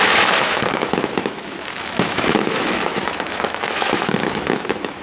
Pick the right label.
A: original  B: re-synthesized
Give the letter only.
B